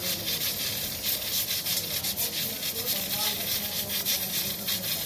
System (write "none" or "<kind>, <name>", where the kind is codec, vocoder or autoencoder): none